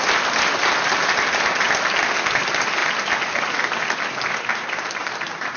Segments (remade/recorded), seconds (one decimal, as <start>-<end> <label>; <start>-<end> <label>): 0.0-5.0 recorded; 5.0-5.6 remade